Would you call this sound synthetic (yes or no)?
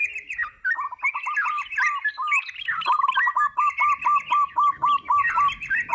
no